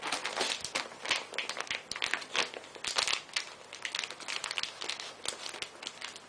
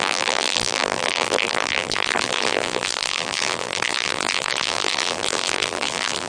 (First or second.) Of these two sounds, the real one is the first